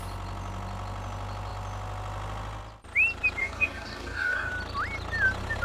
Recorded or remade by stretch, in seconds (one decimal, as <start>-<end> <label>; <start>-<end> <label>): 0.0-3.4 recorded; 3.4-4.5 remade; 4.5-5.6 recorded